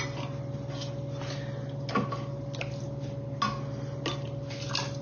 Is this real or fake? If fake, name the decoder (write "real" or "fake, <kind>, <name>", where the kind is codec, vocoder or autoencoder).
real